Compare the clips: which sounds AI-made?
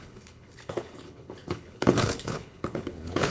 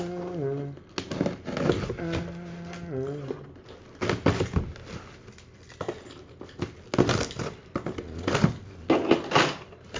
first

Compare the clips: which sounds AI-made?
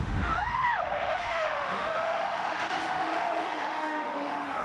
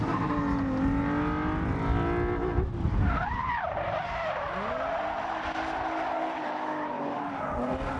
first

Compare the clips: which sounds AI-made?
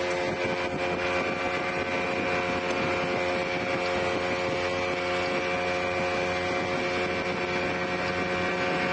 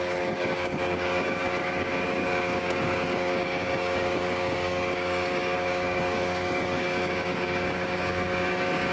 second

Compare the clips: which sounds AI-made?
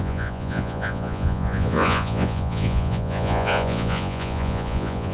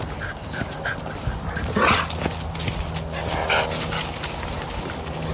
first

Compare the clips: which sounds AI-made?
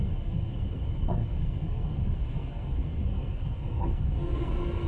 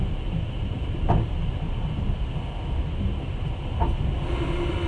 first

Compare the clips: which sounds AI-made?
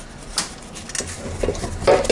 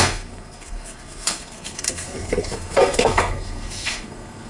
second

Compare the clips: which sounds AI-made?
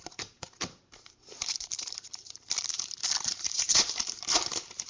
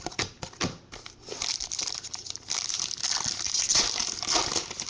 first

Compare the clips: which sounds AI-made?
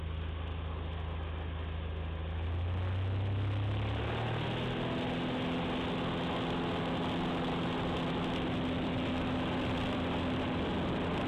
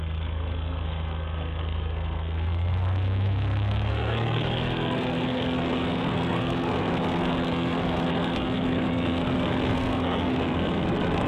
second